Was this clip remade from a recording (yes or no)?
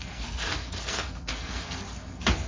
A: yes